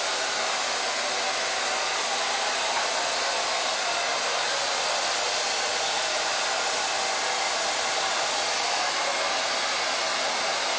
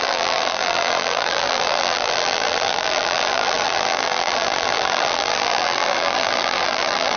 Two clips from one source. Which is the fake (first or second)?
second